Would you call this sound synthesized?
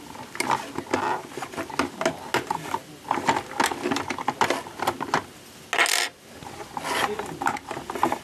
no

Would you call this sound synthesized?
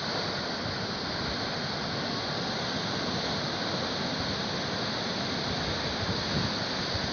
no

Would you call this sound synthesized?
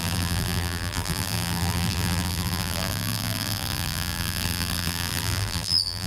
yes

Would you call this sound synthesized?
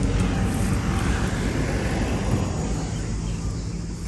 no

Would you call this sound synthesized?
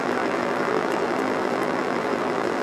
yes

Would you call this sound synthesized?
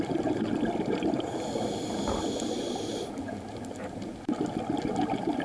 no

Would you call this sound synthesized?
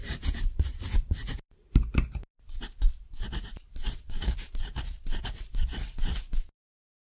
yes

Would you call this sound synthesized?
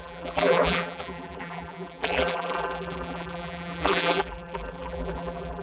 yes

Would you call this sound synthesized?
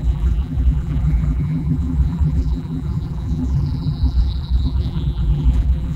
yes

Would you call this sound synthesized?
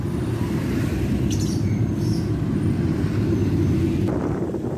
yes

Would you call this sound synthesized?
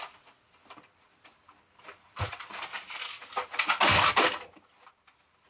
no